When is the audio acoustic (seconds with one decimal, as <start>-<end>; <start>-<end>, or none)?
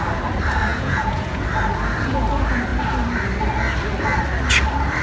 0.0-0.7; 1.4-5.0